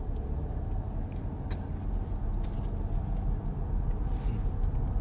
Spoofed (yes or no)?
no